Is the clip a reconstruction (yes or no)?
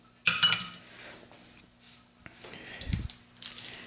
no